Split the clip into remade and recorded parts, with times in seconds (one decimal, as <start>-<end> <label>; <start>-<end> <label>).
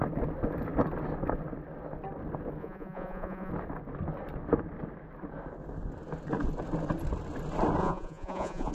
0.0-2.6 recorded; 2.6-3.5 remade; 3.5-7.8 recorded; 7.8-8.7 remade